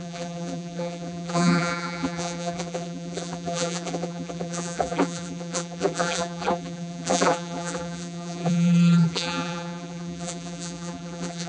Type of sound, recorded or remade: remade